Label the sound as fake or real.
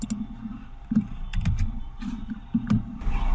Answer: real